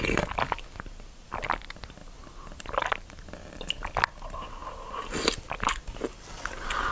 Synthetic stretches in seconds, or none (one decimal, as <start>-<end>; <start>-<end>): none